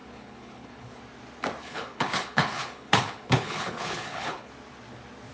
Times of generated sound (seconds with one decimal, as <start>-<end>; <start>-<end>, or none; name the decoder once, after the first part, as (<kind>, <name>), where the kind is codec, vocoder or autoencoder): 0.0-1.0 (codec, HILCodec); 1.6-4.5